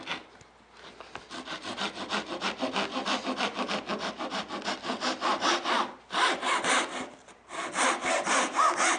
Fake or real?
real